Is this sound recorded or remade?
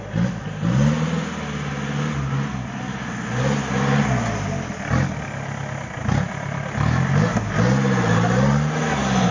recorded